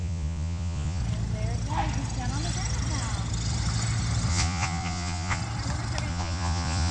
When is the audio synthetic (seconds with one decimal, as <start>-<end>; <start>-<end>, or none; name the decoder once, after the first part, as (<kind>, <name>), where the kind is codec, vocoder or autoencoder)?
0.0-1.0 (vocoder, Vocos); 4.3-5.4; 6.1-6.9